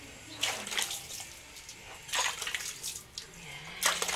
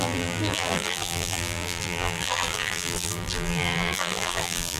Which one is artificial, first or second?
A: second